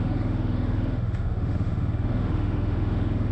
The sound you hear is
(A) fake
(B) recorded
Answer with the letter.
A